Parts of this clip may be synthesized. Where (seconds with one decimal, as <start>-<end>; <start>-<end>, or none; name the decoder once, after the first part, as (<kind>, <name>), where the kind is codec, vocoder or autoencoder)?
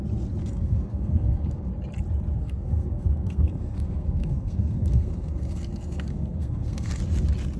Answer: 0.4-1.7 (codec, SNAC); 2.4-7.0